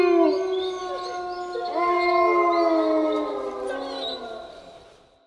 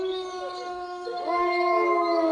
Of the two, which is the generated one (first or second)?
second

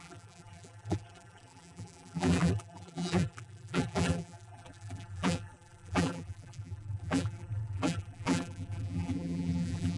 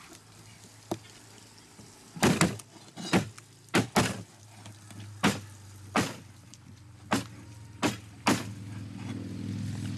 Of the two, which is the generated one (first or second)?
first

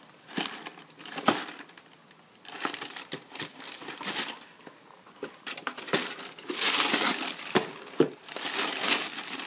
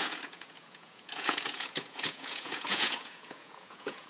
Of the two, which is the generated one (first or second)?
second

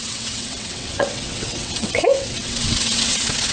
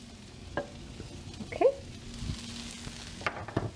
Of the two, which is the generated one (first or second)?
first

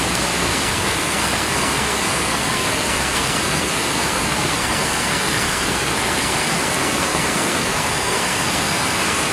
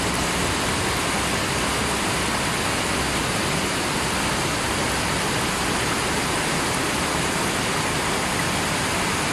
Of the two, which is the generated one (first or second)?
first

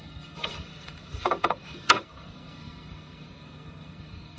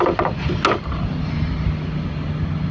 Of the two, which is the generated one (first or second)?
first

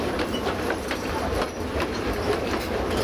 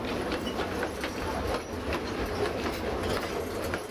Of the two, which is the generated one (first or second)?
first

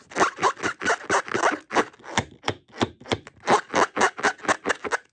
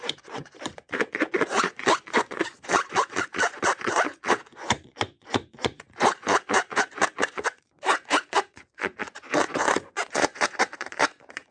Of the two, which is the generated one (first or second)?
second